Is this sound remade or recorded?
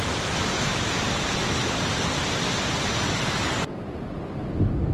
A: recorded